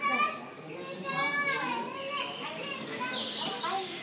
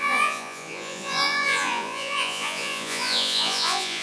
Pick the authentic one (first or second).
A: first